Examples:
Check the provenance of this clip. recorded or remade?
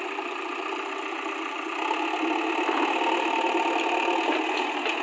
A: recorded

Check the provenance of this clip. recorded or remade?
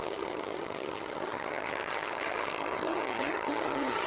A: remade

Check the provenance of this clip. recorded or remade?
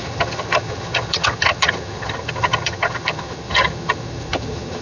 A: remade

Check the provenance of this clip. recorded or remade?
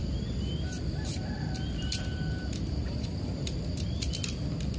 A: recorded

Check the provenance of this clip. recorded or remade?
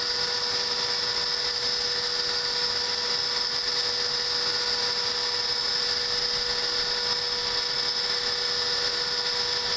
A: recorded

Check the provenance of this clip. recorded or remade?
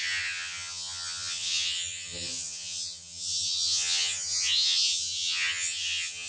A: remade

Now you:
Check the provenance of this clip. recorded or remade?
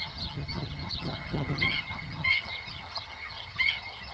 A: remade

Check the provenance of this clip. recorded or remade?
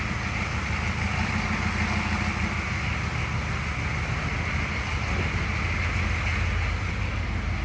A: recorded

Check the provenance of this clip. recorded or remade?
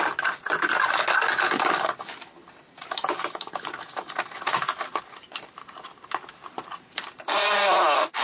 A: recorded